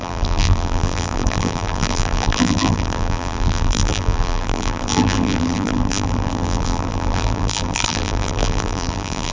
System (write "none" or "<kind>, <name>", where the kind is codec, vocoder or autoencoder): vocoder, BigVGAN v2